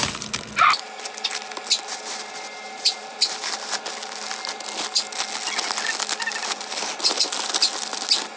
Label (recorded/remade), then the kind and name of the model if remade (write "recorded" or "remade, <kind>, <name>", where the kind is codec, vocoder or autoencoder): recorded